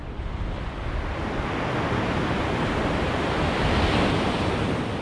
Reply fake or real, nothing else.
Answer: real